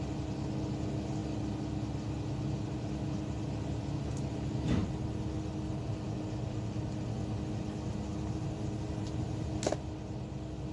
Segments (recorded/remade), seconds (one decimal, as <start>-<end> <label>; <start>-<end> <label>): 0.0-10.7 recorded